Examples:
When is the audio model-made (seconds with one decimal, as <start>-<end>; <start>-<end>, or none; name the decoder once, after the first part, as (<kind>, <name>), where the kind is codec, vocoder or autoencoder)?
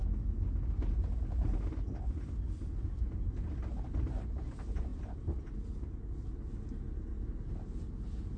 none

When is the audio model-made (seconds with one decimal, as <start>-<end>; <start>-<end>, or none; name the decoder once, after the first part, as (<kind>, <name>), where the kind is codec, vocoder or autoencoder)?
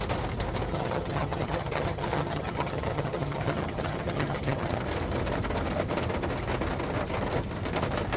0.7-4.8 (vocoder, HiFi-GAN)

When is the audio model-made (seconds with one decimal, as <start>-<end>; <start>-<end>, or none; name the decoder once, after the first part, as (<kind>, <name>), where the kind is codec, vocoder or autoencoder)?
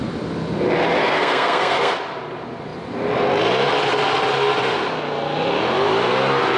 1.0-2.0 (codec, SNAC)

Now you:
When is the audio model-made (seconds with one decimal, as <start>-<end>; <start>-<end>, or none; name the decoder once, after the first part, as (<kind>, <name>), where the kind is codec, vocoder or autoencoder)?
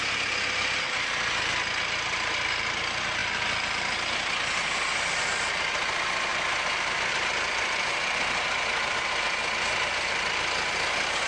none